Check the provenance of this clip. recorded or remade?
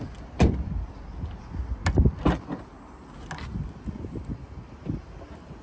recorded